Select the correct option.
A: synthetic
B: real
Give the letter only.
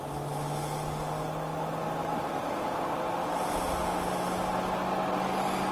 B